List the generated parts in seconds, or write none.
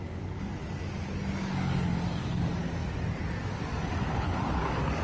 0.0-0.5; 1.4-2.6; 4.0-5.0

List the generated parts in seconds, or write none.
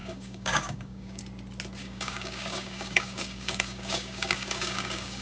0.0-1.2; 1.8-5.2